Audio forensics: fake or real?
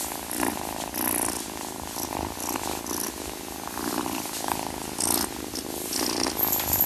real